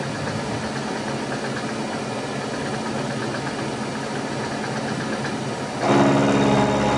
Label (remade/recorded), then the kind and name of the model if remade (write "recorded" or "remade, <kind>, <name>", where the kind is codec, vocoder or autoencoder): recorded